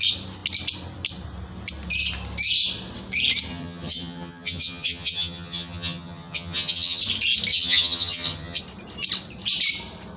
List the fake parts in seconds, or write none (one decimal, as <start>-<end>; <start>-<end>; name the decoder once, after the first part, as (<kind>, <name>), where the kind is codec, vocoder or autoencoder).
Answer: 3.5-7.0 (vocoder, HiFi-GAN); 7.5-8.6

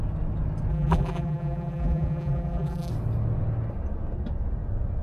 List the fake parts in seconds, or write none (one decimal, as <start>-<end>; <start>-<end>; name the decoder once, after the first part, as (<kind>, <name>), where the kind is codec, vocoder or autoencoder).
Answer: 0.7-2.9 (vocoder, BigVGAN v2)

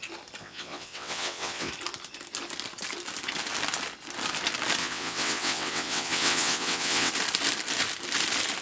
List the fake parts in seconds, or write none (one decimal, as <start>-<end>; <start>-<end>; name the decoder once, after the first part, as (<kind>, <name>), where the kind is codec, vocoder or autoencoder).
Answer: 0.4-1.7 (vocoder, WaveNeXt); 4.8-7.1

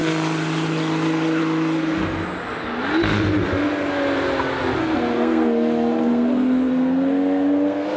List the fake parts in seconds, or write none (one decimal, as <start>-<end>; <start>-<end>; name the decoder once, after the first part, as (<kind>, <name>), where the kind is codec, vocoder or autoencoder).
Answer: 4.8-8.0 (codec, SNAC)

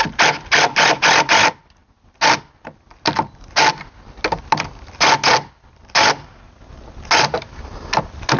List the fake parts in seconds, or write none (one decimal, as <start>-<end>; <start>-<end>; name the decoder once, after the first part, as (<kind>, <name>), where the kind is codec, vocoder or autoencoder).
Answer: none

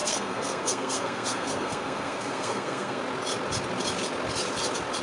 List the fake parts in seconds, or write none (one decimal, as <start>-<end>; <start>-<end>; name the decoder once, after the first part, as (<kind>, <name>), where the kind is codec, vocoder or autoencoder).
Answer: 0.0-3.0 (codec, SNAC)

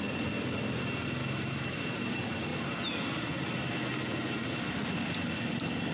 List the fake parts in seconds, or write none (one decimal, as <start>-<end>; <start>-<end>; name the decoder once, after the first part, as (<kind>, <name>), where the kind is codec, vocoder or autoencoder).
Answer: 1.2-1.8 (autoencoder, DAC-VAE)